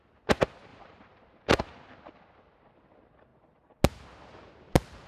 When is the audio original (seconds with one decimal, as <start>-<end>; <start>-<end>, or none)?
0.0-0.7; 1.6-5.1